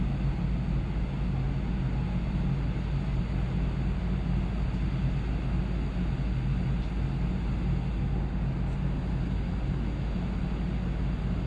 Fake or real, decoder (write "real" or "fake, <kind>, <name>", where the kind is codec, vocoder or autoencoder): real